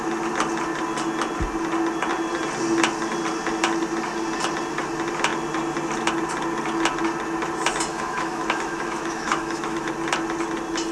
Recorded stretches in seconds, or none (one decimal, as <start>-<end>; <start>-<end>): 0.0-7.9; 9.9-10.9